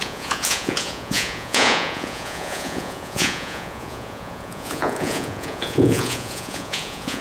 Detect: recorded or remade remade